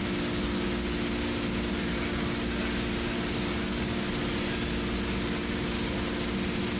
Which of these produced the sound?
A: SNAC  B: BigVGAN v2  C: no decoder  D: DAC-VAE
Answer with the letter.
C